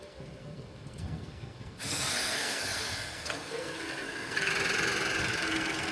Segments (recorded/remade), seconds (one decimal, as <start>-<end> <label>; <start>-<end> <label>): 0.0-4.5 remade; 4.5-5.2 recorded; 5.2-5.9 remade